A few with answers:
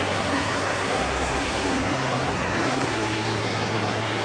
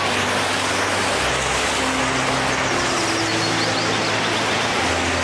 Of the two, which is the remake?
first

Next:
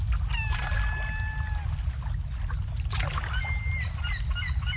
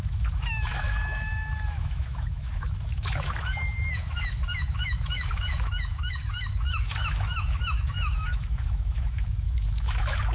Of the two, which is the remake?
second